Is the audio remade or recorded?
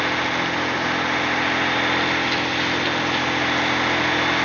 recorded